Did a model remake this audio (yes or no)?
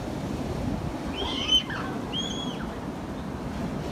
no